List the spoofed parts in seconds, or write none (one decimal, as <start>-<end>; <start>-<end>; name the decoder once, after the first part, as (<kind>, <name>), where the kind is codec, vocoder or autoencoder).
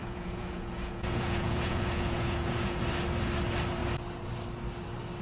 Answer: 0.0-2.8 (vocoder, Vocos)